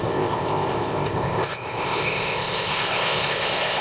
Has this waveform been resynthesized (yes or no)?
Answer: yes